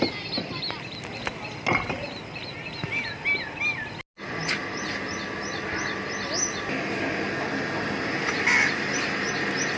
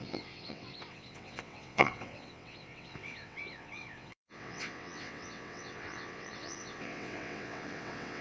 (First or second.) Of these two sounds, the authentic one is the first